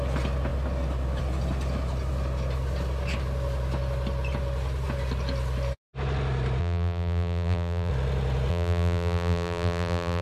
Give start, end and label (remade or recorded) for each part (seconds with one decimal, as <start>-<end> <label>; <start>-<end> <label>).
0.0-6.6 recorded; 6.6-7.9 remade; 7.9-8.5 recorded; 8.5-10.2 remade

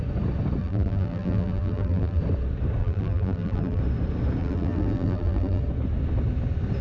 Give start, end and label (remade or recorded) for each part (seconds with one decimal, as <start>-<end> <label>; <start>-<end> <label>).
0.0-0.6 recorded; 0.6-2.2 remade; 2.2-2.8 recorded; 2.8-3.8 remade; 3.8-4.4 recorded; 4.4-5.6 remade; 5.6-6.8 recorded

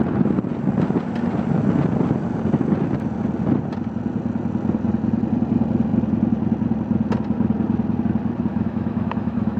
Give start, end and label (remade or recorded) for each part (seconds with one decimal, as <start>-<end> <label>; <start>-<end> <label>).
0.0-8.5 recorded; 8.5-9.6 remade